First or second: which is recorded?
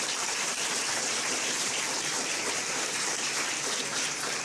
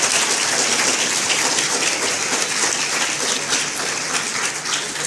second